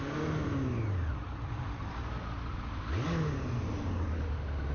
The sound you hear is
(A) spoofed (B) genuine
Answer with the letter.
B